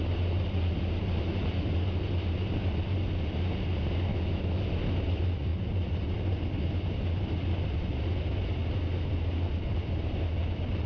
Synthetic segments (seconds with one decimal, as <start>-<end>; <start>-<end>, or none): 4.1-4.8